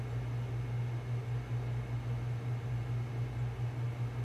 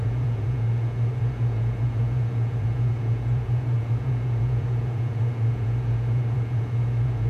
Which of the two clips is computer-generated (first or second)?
second